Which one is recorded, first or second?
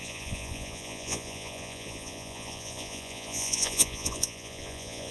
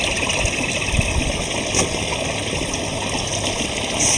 second